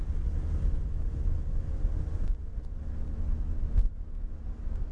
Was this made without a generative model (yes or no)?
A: yes